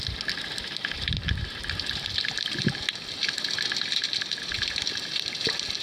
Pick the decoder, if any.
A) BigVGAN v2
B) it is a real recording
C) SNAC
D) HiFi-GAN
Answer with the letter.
B